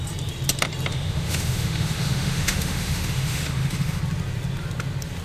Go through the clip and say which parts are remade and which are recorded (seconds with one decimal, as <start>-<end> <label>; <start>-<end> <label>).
0.0-0.9 recorded; 0.9-4.0 remade; 4.0-5.2 recorded